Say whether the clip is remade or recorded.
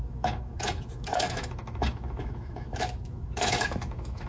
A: remade